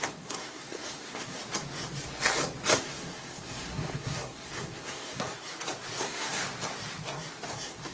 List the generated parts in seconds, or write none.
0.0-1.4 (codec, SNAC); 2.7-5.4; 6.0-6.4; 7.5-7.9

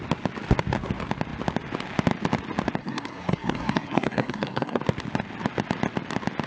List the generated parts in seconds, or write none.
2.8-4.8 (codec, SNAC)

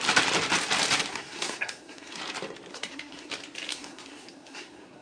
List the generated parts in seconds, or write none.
1.1-2.2 (codec, SNAC); 2.7-3.3; 3.7-5.0

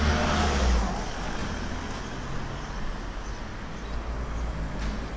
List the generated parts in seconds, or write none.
none

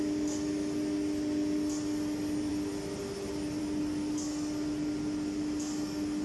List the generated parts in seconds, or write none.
none

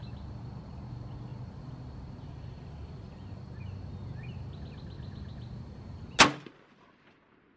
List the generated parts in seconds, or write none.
none

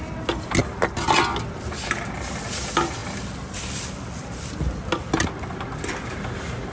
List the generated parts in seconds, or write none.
none

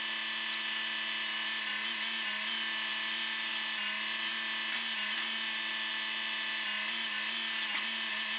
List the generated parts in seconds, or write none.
none